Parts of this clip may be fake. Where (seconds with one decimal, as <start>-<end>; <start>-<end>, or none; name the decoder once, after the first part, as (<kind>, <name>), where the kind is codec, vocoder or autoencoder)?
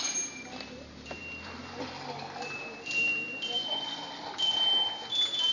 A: 1.2-4.5 (vocoder, BigVGAN v2)